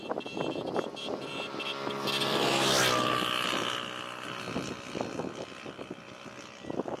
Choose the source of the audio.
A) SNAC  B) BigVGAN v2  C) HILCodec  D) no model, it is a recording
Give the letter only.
D